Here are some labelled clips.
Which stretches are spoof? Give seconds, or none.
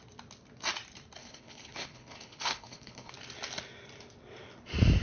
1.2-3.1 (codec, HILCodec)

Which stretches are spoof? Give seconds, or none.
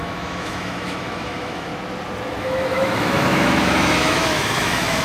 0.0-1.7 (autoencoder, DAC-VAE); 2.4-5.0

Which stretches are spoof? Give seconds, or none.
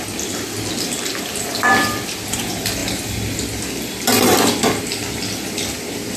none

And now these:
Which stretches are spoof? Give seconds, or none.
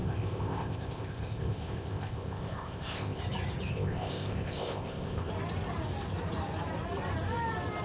0.0-3.2 (codec, ZipCodec); 3.7-5.3